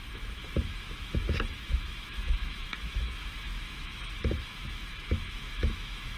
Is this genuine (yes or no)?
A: no